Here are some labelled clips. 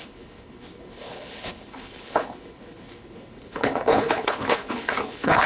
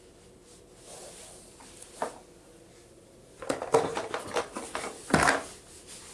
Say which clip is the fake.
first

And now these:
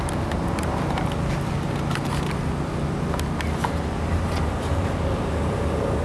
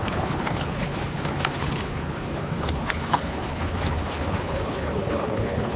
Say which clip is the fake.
second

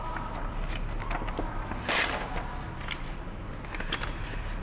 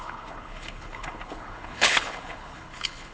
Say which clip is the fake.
second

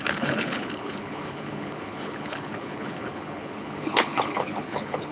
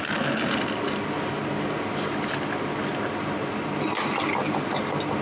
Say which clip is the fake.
first